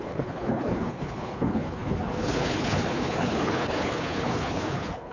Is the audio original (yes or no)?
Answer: no